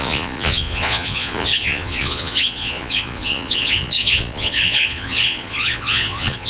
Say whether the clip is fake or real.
fake